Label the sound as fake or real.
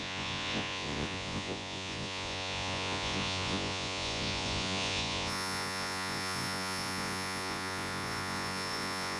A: fake